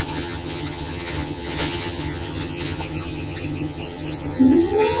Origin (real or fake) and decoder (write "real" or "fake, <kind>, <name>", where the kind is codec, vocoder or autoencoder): fake, vocoder, HiFi-GAN